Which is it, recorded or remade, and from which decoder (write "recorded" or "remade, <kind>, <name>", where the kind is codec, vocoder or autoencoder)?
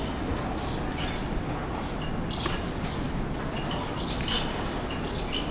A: recorded